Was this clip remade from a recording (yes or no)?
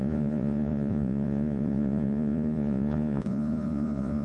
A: yes